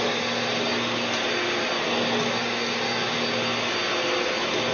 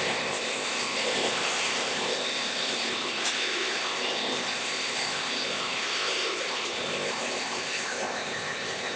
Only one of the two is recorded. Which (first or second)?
first